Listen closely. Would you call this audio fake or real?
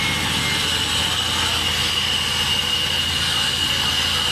real